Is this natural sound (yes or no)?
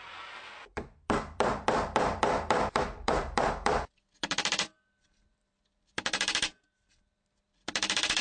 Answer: no